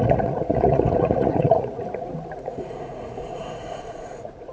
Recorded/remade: remade